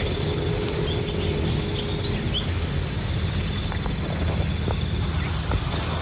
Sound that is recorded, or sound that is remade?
recorded